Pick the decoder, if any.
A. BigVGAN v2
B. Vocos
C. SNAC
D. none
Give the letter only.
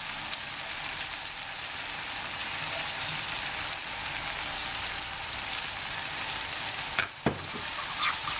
D